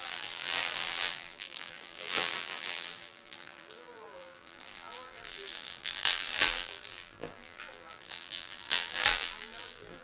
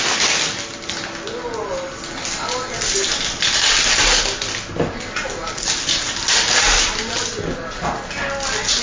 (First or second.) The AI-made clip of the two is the first